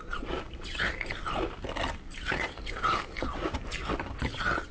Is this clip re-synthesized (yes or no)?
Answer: no